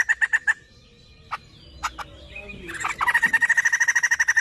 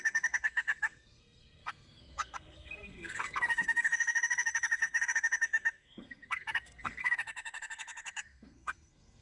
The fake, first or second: second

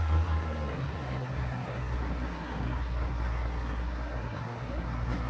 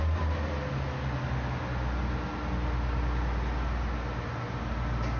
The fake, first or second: first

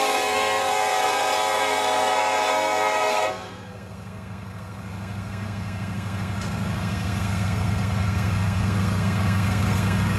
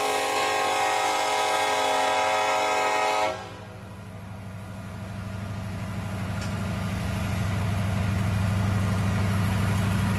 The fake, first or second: first